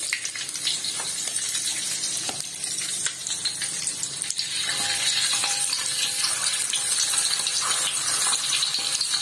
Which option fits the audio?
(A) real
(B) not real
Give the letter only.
B